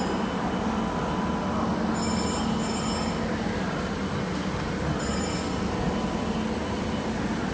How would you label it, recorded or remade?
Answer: recorded